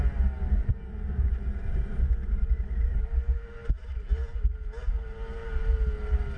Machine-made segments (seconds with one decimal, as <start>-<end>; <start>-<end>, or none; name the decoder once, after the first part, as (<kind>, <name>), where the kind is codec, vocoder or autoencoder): none